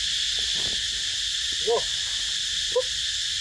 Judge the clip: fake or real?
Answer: real